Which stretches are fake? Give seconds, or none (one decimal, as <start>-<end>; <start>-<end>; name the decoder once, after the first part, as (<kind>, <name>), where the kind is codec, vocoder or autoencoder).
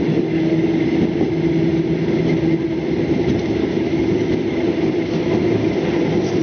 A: none